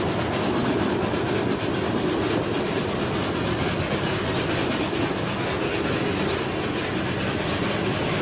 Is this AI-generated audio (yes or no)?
no